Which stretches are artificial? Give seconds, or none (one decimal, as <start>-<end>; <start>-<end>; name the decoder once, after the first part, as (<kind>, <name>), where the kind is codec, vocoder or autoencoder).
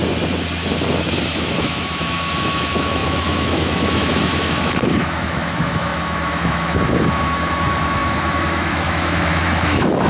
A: 1.2-10.1 (autoencoder, DAC-VAE)